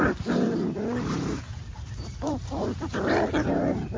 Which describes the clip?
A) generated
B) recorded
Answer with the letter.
A